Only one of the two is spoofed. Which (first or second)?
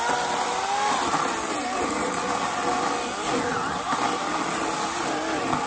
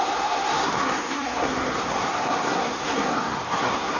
second